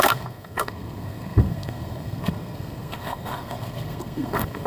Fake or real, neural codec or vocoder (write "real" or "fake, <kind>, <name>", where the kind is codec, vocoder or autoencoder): fake, codec, SNAC